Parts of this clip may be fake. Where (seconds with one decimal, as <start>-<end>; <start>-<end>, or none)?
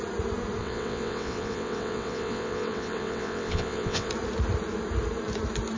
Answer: 0.6-4.1